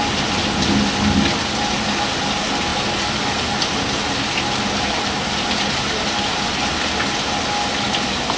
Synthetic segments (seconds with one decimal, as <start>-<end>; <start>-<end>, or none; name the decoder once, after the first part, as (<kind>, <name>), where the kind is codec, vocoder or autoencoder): none